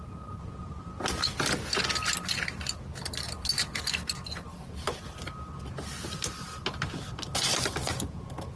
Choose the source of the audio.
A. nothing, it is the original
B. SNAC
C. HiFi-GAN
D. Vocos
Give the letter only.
A